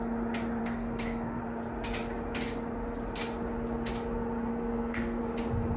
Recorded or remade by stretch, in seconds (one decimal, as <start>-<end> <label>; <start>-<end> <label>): 0.0-0.6 recorded; 0.6-1.4 remade; 1.4-4.5 recorded; 4.5-5.2 remade; 5.2-5.8 recorded